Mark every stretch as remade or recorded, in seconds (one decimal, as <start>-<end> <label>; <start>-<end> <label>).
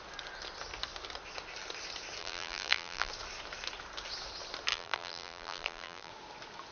0.0-2.2 recorded; 2.2-3.1 remade; 3.1-4.7 recorded; 4.7-6.1 remade; 6.1-6.7 recorded